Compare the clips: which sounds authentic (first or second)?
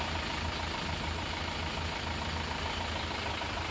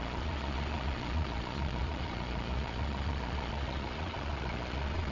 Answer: first